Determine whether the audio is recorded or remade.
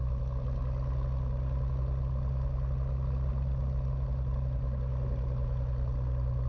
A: recorded